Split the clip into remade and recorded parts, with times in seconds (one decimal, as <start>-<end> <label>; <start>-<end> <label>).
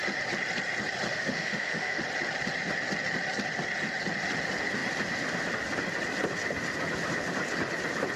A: 0.0-1.1 recorded; 1.1-2.0 remade; 2.0-8.2 recorded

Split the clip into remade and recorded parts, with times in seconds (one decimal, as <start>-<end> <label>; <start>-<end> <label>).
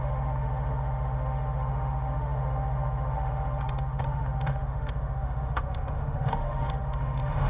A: 0.0-7.5 remade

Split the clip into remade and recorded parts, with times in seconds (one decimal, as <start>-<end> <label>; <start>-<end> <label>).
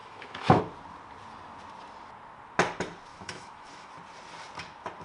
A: 0.0-0.6 remade; 0.6-3.1 recorded; 3.1-3.9 remade; 3.9-5.0 recorded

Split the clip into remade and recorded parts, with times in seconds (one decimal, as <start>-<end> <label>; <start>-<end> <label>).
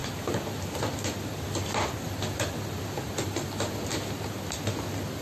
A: 0.0-5.2 recorded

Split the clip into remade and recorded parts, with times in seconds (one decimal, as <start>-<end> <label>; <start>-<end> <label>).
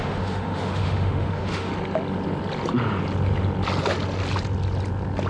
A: 0.0-1.7 remade; 1.7-5.3 recorded